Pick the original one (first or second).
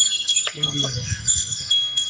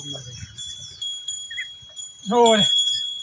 second